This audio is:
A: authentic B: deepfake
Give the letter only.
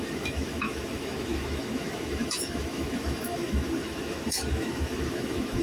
B